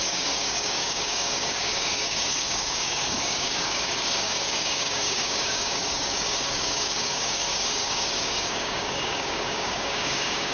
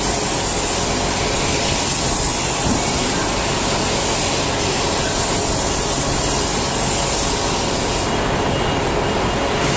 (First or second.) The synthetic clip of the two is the first